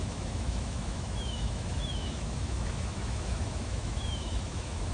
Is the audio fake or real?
fake